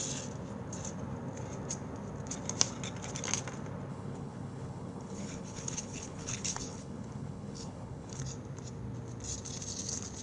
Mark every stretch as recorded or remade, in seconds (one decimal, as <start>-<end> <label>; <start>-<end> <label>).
0.0-3.9 recorded; 3.9-8.2 remade; 8.2-10.2 recorded